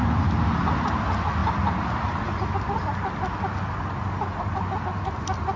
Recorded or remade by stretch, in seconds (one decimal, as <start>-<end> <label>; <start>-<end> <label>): 0.0-5.6 recorded